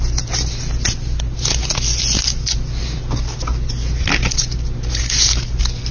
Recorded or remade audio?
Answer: recorded